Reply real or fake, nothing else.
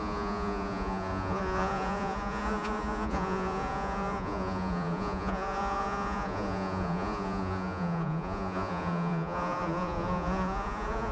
fake